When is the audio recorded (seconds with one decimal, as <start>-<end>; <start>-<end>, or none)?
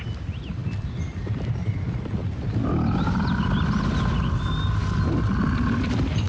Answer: 0.0-0.6; 2.1-6.3